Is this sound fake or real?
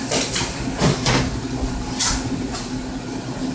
real